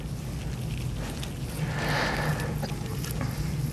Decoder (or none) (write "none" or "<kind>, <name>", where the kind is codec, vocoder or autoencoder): none